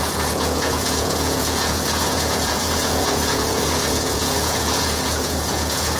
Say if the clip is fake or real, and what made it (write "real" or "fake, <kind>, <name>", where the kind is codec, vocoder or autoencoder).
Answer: fake, vocoder, Vocos